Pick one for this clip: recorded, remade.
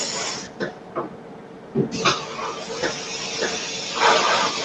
recorded